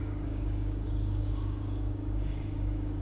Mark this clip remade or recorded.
remade